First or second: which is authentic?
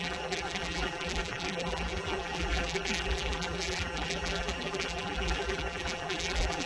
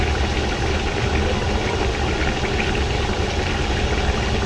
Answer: second